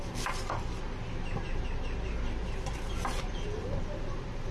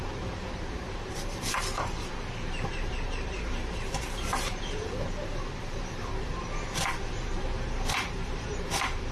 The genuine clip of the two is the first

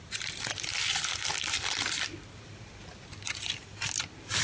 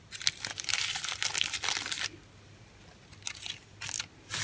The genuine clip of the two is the second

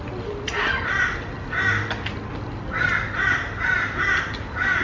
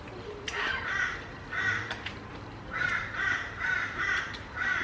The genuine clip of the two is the first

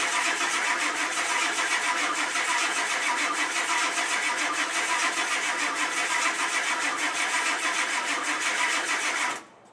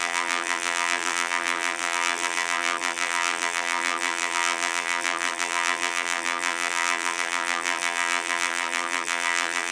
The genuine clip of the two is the first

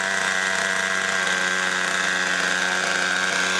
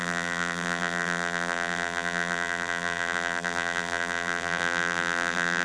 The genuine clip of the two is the first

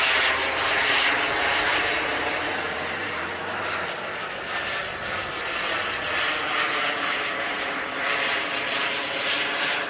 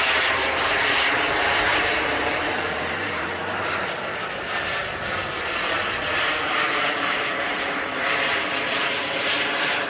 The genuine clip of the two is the first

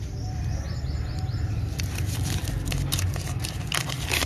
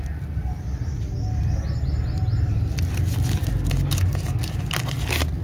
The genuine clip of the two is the second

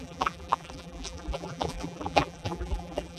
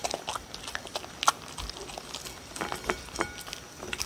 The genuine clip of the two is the second